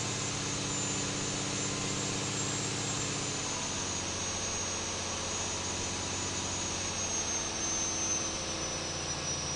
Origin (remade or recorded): recorded